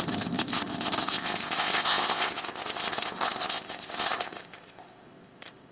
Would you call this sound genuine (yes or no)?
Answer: no